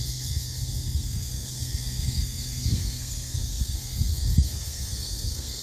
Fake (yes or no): yes